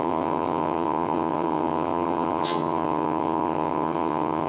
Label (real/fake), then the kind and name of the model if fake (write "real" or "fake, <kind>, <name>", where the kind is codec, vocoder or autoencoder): fake, vocoder, HiFi-GAN